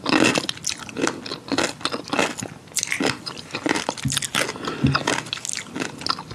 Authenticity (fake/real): real